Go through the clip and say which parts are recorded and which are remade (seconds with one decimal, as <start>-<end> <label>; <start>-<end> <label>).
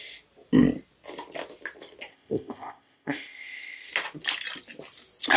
0.0-2.1 recorded; 2.1-3.9 remade; 3.9-5.4 recorded